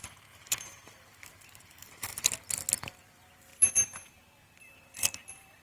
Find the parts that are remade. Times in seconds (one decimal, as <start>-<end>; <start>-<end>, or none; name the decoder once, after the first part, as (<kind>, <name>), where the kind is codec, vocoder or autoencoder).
0.0-2.1 (vocoder, BigVGAN v2); 3.0-5.6